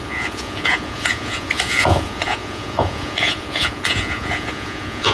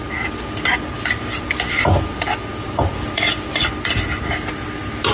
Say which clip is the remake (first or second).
first